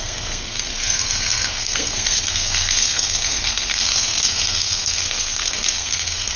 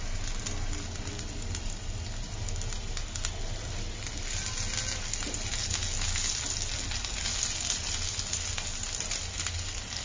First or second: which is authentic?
second